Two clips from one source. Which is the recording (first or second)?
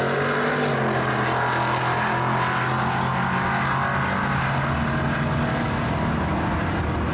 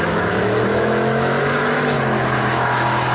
first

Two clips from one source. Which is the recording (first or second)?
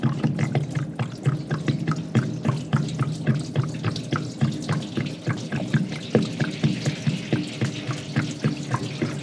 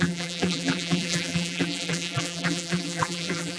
first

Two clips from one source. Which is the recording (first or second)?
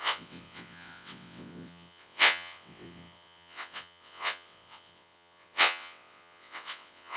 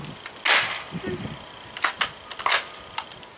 second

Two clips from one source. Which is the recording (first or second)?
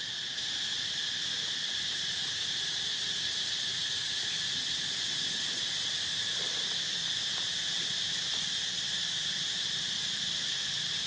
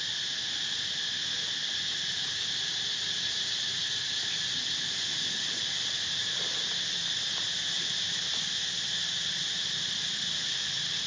second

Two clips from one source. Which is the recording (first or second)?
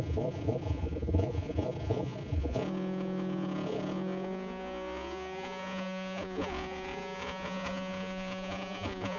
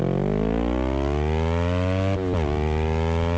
second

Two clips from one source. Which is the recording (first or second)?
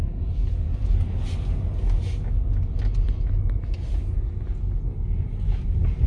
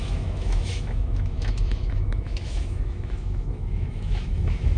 first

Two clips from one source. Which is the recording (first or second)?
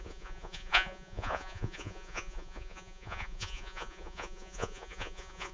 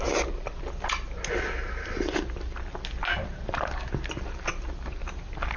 second